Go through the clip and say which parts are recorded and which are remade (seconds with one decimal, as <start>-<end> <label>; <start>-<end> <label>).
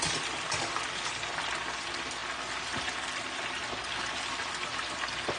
0.0-5.4 recorded